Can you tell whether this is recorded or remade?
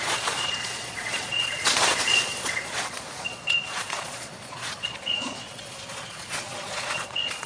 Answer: remade